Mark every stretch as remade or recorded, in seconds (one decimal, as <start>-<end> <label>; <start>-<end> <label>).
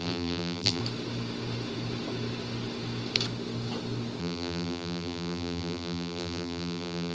0.0-0.8 remade; 0.8-4.2 recorded; 4.2-7.1 remade